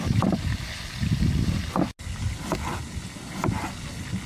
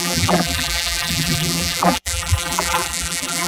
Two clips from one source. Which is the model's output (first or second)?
second